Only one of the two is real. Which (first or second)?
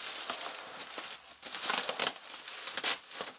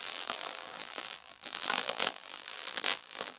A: first